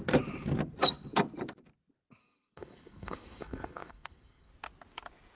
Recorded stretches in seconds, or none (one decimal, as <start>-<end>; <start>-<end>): 0.0-2.2; 4.5-5.4